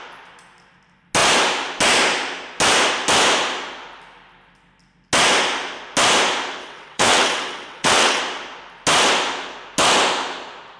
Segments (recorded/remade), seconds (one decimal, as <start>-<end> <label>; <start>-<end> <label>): 0.0-6.6 recorded; 6.6-8.2 remade; 8.2-10.8 recorded